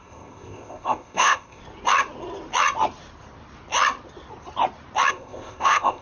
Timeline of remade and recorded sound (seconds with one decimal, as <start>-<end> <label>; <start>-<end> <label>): 0.0-1.6 remade; 1.6-5.1 recorded; 5.1-6.0 remade